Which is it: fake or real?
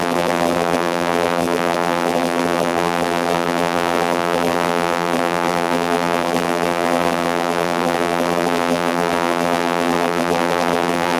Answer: fake